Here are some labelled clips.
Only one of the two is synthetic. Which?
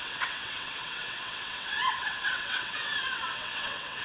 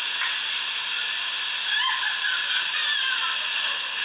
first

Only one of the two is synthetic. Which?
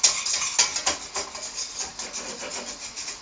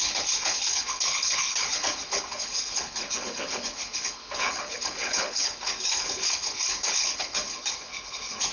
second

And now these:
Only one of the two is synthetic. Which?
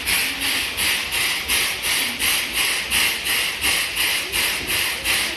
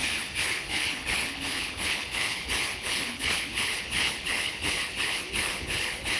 second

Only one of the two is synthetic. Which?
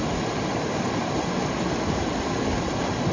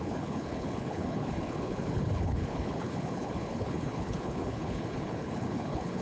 second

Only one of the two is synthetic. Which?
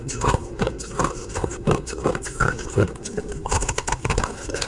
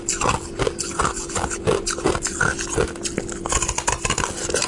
first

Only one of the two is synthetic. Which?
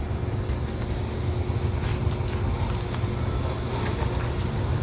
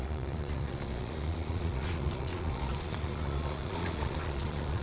second